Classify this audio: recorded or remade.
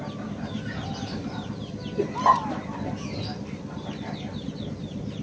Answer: recorded